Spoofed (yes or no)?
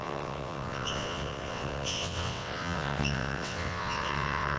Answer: yes